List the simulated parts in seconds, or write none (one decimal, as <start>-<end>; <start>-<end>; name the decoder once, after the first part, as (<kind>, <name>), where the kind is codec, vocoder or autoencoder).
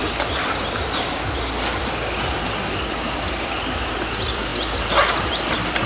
0.0-4.5 (vocoder, BigVGAN v2); 5.4-5.9